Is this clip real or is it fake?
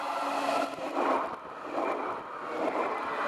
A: real